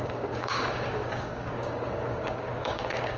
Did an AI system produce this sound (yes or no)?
yes